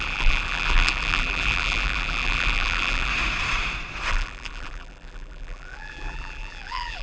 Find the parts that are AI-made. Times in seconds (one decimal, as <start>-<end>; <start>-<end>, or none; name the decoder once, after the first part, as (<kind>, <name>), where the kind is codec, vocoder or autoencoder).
0.0-3.1 (vocoder, BigVGAN v2); 4.1-7.0